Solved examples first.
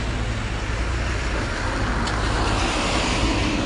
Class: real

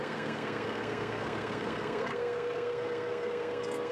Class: fake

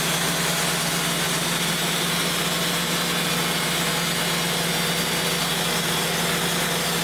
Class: real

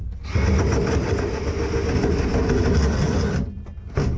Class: real